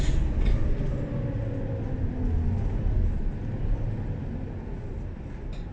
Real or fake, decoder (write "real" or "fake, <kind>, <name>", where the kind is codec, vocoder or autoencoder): real